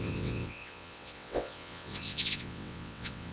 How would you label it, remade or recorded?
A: remade